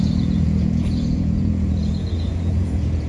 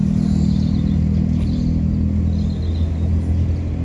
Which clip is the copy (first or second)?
first